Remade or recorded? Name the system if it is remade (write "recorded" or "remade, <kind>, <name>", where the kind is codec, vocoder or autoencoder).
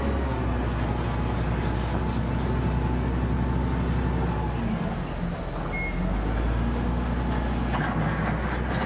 recorded